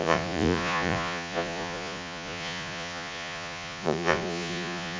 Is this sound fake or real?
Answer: fake